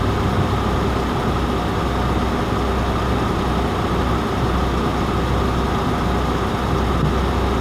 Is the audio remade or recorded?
recorded